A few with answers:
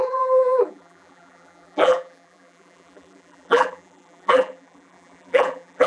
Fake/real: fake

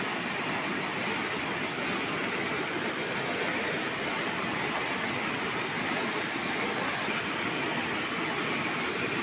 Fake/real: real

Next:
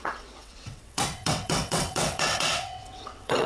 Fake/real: fake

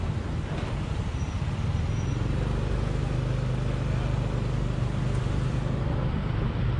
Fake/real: real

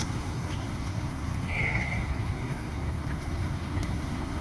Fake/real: fake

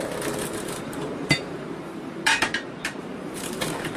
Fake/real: fake